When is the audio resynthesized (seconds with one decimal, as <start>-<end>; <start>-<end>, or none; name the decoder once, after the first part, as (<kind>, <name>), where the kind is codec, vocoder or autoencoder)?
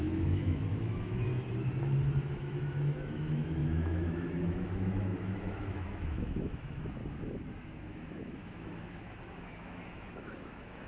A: 0.0-1.3 (autoencoder, DAC-VAE); 2.2-7.0; 7.6-10.9